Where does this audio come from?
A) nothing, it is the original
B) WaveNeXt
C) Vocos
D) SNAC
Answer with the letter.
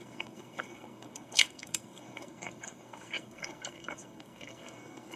D